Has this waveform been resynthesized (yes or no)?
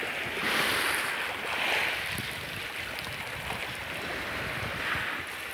no